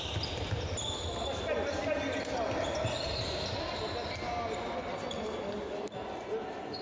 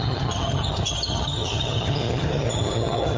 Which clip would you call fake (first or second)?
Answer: second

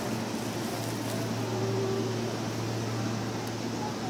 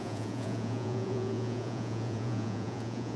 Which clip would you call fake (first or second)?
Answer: second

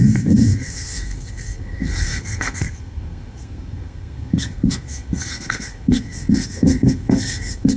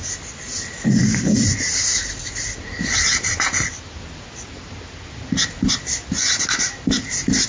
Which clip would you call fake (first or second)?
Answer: first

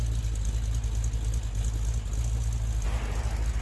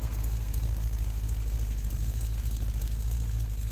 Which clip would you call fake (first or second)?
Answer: second